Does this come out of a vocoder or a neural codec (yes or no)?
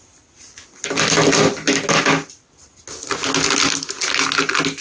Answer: no